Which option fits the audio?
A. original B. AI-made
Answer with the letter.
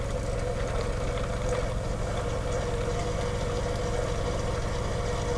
A